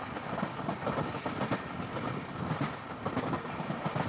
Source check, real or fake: fake